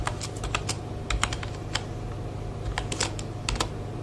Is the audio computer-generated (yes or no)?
no